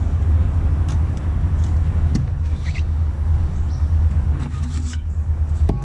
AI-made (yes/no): yes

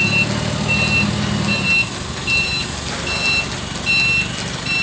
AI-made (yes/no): no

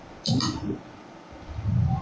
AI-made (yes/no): no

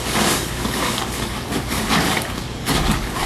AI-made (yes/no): yes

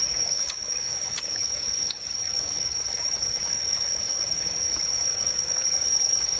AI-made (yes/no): yes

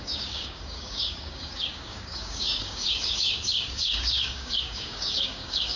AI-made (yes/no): yes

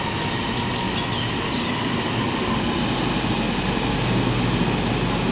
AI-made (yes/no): no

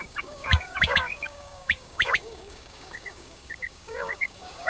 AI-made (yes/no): yes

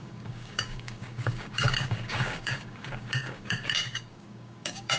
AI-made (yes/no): yes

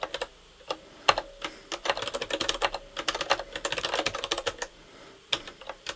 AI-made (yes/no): no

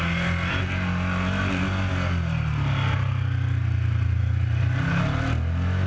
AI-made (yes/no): no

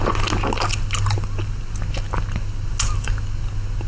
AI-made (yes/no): no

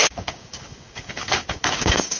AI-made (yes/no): yes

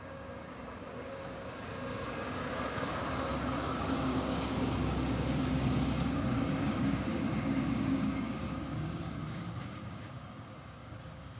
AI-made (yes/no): yes